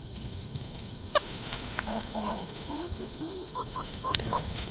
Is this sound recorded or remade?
remade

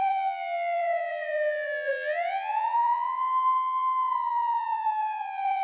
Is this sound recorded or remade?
remade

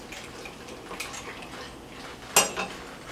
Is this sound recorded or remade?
recorded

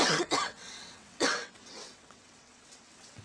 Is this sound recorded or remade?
remade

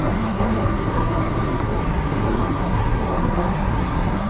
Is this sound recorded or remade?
remade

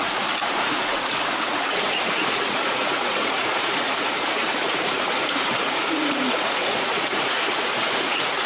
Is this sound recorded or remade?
remade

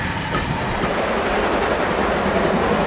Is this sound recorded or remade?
recorded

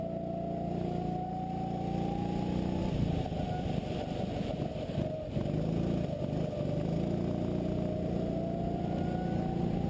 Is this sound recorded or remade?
recorded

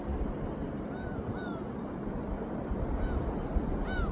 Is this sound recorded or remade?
recorded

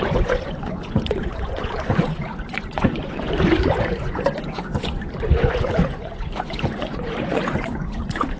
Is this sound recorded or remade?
remade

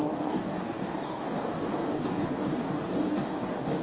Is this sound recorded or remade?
remade